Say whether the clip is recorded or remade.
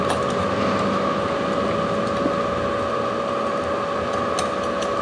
recorded